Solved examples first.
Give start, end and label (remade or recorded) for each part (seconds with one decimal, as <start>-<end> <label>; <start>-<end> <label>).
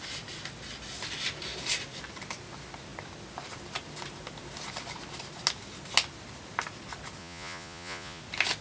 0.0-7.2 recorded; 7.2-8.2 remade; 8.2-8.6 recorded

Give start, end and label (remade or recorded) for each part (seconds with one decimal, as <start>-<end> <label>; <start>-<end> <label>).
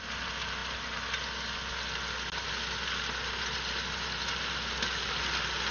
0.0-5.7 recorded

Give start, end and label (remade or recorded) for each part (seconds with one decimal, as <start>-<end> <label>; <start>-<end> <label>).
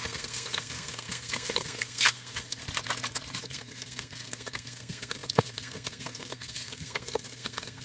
0.0-2.6 remade; 2.6-3.4 recorded; 3.4-7.8 remade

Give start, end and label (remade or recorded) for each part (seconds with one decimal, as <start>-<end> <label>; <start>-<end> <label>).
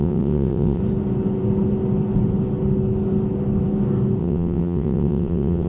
0.0-0.8 remade; 0.8-4.2 recorded; 4.2-5.7 remade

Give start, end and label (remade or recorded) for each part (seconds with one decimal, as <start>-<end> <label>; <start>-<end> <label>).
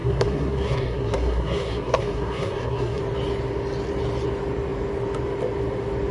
0.0-3.0 remade; 3.0-6.1 recorded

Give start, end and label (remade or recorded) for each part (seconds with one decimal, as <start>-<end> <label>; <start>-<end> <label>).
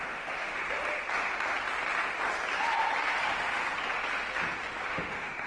0.0-0.6 remade; 0.6-3.2 recorded; 3.2-3.6 remade; 3.6-4.9 recorded; 4.9-5.5 remade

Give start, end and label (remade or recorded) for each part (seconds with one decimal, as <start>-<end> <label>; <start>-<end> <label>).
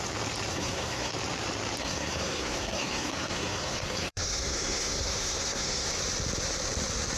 0.0-0.5 recorded; 0.5-1.1 remade; 1.1-1.8 recorded; 1.8-5.9 remade; 5.9-7.2 recorded